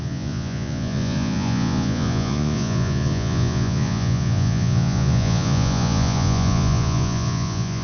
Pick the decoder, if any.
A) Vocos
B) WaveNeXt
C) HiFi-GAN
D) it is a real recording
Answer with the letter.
A